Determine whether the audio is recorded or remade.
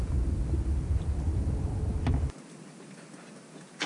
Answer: recorded